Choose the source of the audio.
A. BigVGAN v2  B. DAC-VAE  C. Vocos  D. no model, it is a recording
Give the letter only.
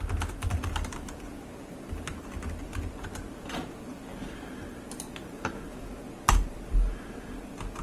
D